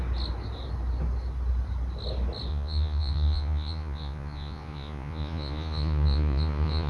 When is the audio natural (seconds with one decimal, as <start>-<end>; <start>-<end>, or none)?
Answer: 0.0-2.5